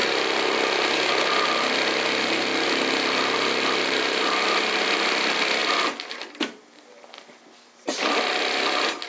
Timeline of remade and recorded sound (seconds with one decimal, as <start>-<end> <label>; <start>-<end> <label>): 0.0-9.1 recorded